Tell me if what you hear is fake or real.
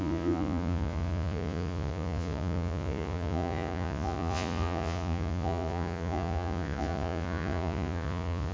fake